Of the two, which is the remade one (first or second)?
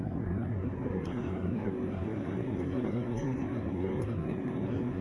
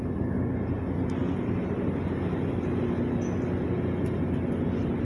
first